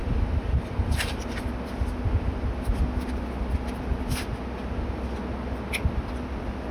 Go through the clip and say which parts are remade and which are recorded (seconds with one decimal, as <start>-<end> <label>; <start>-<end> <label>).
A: 0.0-1.4 remade; 1.4-6.7 recorded